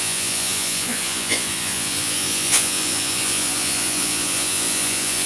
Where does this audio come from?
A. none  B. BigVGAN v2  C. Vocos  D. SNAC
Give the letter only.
C